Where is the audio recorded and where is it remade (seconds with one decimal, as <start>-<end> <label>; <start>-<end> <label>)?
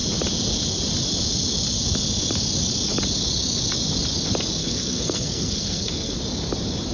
0.0-4.6 recorded; 4.6-6.2 remade; 6.2-6.9 recorded